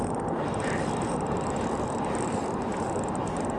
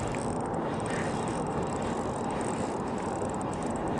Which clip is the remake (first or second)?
first